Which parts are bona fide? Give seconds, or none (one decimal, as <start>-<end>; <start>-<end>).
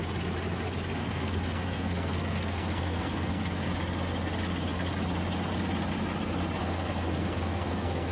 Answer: 0.0-1.0; 3.7-6.6